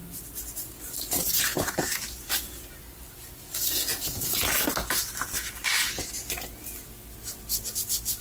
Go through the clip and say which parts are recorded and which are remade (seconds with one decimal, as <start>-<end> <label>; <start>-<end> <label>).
0.0-8.2 recorded